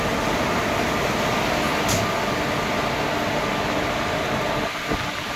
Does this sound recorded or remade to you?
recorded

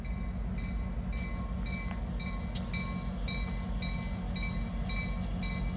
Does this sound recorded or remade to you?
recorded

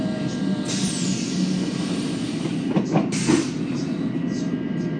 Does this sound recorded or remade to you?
recorded